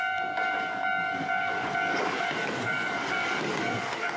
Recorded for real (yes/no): no